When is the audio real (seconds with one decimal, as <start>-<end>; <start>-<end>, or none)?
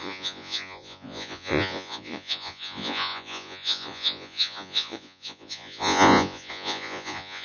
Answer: none